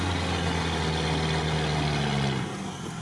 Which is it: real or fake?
real